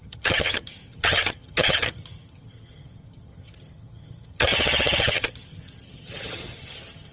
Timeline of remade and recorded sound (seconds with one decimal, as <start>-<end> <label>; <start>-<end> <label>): 0.0-7.1 remade